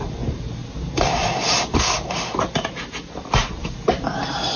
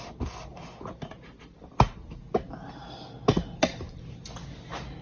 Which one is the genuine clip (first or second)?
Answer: second